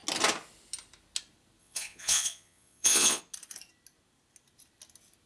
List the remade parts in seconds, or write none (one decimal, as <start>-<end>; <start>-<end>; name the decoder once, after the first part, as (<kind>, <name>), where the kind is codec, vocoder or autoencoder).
1.6-3.2 (vocoder, Vocos)